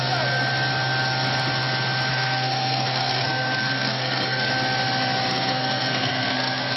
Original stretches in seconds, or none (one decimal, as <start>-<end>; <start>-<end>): 0.0-2.1; 4.5-5.3